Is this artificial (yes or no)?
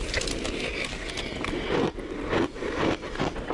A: no